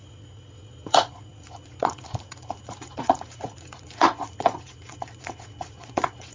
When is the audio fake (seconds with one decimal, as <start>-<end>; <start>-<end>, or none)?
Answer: 0.0-6.3